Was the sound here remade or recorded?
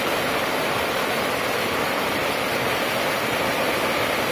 recorded